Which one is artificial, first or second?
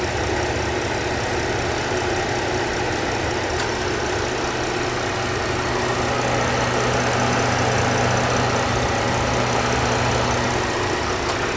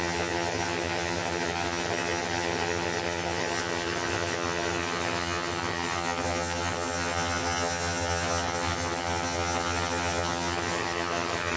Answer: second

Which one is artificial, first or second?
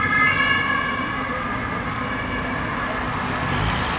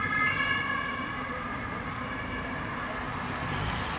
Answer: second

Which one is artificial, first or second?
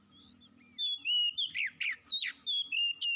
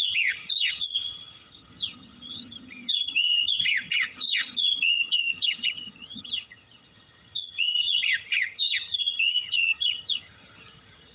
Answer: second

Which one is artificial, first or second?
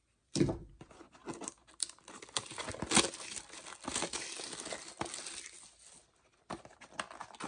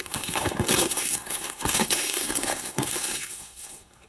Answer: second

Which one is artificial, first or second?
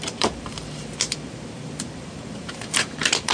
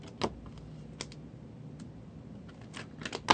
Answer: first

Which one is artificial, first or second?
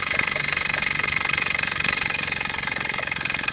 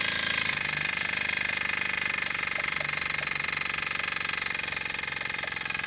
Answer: first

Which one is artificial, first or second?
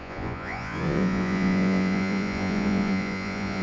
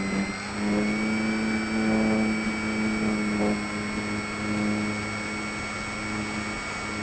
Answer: first